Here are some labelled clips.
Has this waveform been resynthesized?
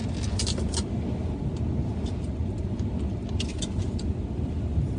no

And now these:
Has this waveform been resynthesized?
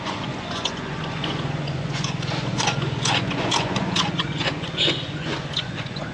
yes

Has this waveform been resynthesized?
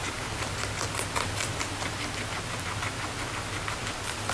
no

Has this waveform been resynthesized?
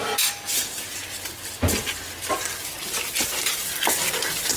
no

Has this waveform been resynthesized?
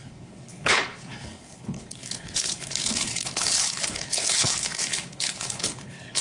yes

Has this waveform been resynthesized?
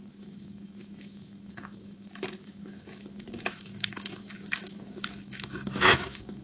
yes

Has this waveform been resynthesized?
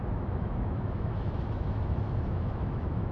yes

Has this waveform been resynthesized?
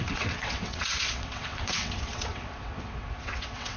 yes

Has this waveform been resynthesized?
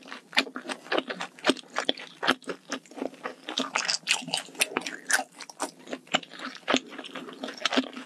no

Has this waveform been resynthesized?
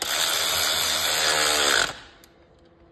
no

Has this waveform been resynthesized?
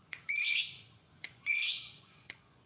yes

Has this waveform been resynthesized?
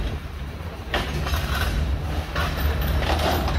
yes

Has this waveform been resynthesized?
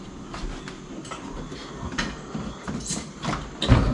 no